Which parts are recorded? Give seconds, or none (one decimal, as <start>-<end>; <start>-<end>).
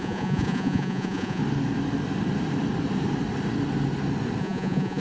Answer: 1.4-4.4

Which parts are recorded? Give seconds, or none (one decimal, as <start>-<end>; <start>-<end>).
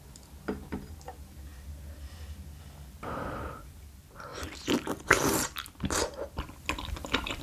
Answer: 0.0-7.4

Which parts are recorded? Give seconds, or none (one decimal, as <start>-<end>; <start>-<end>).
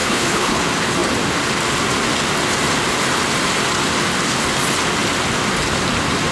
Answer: 0.6-6.3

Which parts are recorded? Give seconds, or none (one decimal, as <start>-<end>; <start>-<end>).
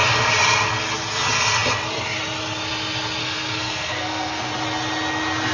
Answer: 0.0-3.2; 4.5-5.5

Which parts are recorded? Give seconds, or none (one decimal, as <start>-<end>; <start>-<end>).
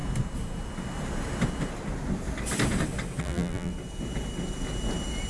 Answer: 0.0-3.2; 3.7-5.3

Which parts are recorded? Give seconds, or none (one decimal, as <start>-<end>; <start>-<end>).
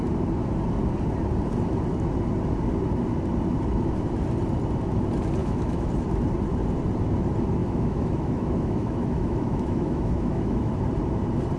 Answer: 0.0-5.4; 5.9-7.6; 10.7-11.6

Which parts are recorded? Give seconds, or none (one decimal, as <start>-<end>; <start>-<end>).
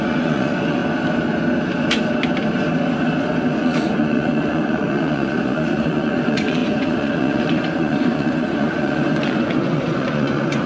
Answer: 0.8-3.5